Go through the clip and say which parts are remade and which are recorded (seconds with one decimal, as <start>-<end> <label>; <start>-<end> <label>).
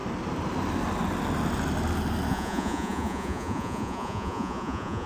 0.0-2.3 recorded; 2.3-5.1 remade